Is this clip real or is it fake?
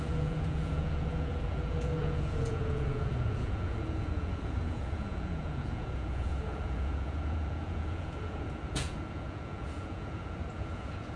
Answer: fake